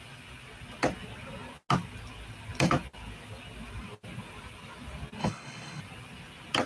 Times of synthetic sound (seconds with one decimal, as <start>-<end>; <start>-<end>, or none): 5.2-5.8